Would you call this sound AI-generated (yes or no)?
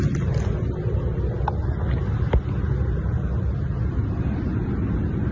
no